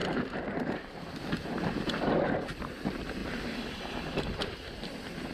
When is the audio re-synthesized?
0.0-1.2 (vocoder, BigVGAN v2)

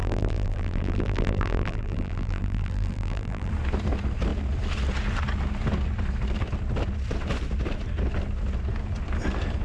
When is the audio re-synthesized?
0.0-3.5 (vocoder, BigVGAN v2)

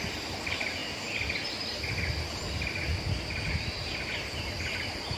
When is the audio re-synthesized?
none